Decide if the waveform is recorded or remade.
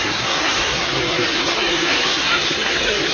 remade